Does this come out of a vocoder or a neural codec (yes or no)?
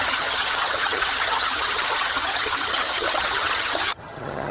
yes